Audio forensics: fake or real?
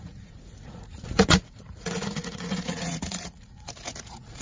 fake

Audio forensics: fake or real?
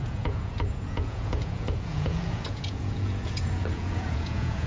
fake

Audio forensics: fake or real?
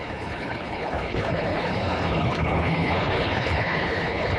fake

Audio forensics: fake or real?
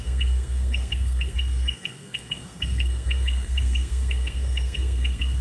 fake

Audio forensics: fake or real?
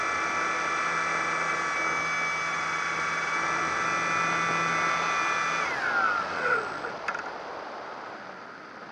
real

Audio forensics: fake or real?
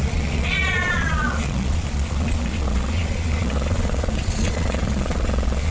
fake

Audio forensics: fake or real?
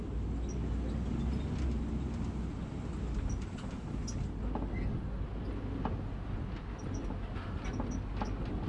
real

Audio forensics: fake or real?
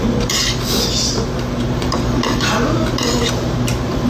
fake